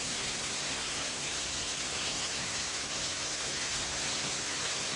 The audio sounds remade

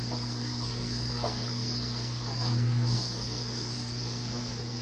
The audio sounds remade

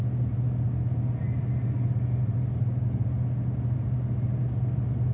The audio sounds recorded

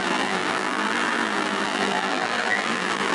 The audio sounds remade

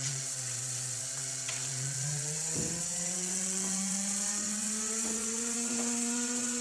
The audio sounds remade